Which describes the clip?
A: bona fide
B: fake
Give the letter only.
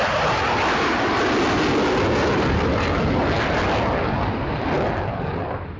A